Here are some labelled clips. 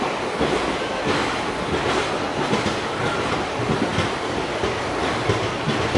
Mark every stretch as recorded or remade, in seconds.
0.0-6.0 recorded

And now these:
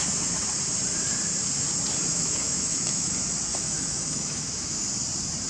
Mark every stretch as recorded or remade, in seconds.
0.0-2.1 recorded; 2.1-3.1 remade; 3.1-3.5 recorded; 3.5-4.8 remade; 4.8-5.5 recorded

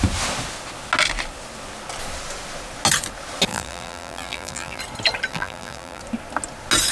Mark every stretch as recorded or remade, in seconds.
0.0-3.5 recorded; 3.5-4.8 remade; 4.8-5.3 recorded; 5.3-6.0 remade; 6.0-6.9 recorded

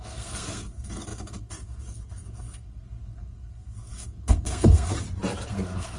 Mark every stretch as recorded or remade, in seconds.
0.0-4.9 remade; 4.9-5.5 recorded; 5.5-6.0 remade